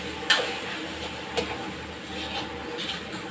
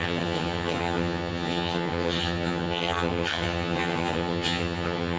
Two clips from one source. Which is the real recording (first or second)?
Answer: first